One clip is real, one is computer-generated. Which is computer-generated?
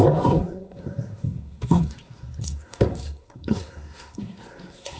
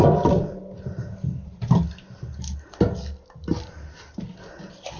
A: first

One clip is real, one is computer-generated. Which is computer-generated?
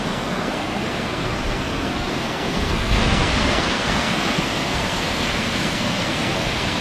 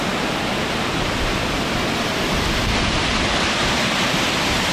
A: first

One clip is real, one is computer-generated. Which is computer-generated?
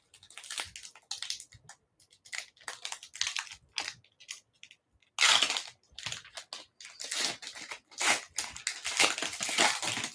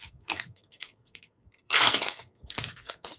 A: second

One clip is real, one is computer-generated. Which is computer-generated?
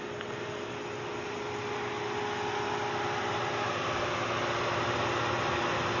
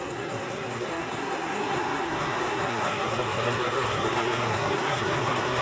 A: second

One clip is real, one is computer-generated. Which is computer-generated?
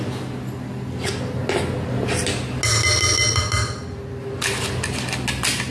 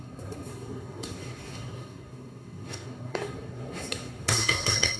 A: second